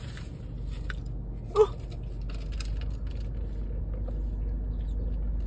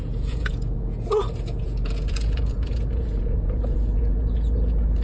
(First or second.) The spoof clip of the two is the second